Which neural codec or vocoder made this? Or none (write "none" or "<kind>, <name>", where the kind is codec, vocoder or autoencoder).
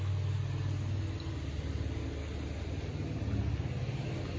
none